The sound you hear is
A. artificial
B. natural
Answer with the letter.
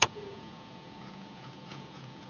A